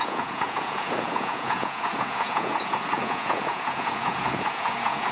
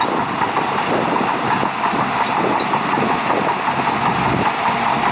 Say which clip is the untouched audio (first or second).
second